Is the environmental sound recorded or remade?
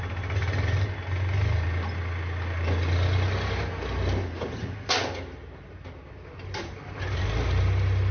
recorded